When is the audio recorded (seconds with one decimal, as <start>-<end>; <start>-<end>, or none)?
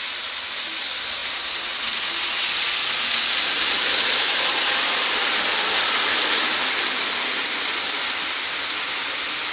0.0-9.5